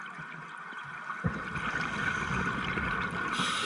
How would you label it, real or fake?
real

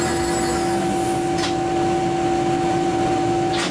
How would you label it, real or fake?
real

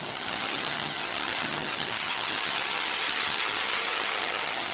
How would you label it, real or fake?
fake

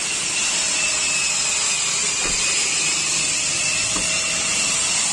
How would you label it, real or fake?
real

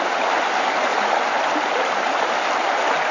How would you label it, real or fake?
real